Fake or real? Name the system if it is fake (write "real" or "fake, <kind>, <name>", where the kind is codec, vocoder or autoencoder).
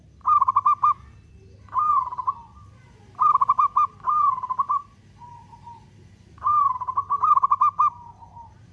fake, vocoder, BigVGAN v2